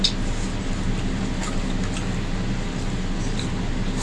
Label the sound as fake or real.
real